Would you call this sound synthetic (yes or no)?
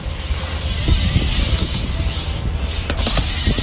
no